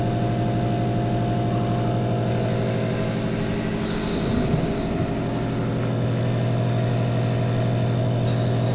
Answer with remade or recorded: recorded